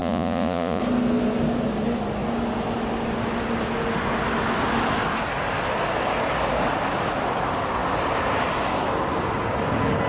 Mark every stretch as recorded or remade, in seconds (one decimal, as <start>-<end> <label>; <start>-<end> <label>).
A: 0.0-0.8 remade; 0.8-10.1 recorded